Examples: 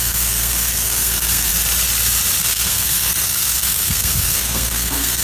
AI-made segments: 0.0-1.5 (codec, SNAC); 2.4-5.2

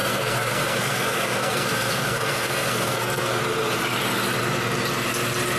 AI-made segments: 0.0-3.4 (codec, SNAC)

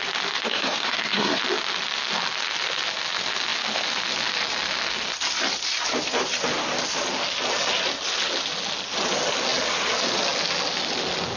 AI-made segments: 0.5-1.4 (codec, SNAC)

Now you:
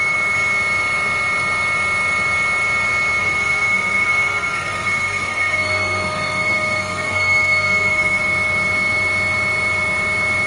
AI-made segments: 3.2-8.2 (codec, SNAC)

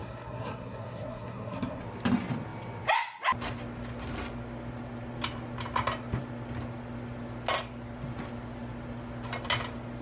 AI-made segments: 0.0-1.8 (codec, SNAC)

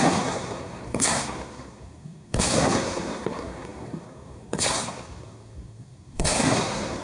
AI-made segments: 0.0-7.0 (codec, SNAC)

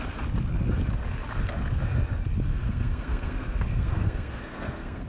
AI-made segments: 2.5-5.1 (codec, SNAC)